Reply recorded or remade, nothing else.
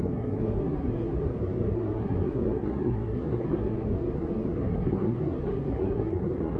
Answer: remade